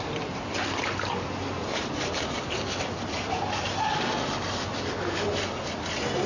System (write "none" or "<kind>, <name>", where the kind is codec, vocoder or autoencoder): none